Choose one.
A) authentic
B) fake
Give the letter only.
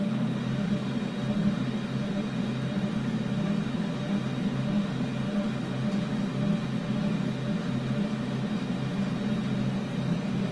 A